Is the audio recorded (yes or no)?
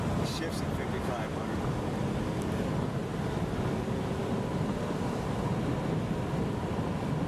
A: yes